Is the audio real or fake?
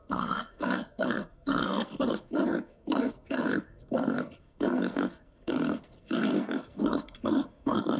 fake